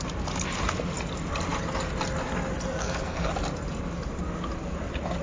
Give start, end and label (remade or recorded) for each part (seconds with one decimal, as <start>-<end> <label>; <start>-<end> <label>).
0.0-2.7 recorded; 2.7-3.3 remade; 3.3-5.2 recorded